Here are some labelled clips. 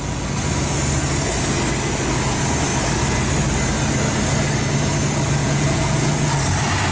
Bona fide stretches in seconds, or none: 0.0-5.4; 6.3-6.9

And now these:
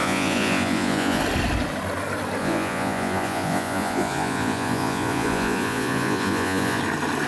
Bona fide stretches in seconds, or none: 1.2-2.4; 6.8-7.3

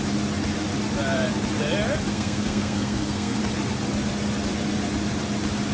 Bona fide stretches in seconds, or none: 0.0-2.1; 3.4-5.7

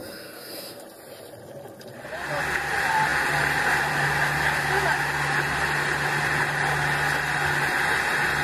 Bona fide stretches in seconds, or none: 0.8-8.4